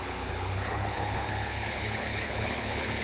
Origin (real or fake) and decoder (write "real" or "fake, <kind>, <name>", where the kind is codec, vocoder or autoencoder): fake, codec, HILCodec